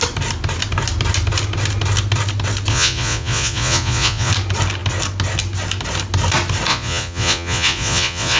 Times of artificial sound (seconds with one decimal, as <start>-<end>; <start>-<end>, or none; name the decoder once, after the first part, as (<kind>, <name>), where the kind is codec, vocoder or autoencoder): 2.7-4.3 (vocoder, Vocos); 6.7-8.4